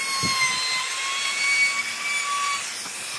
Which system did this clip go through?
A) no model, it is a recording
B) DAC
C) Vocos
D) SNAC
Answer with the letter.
A